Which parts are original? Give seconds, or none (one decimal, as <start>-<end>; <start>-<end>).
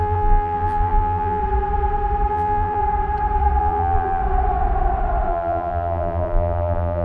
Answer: 1.4-2.3; 2.8-3.6; 4.2-5.3